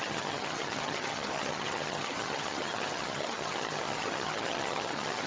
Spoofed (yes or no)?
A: yes